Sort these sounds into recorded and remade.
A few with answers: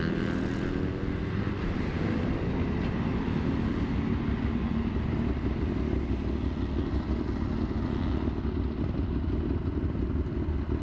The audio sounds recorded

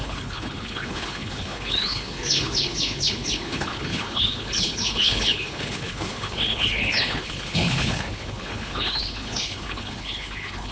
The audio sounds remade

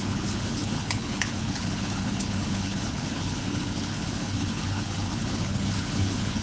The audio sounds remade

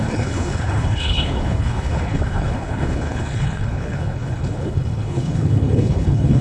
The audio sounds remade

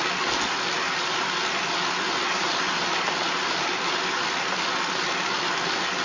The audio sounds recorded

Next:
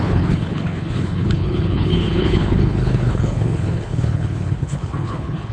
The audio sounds remade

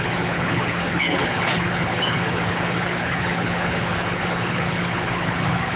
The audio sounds remade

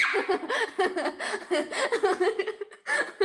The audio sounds recorded